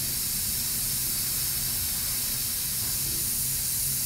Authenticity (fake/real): real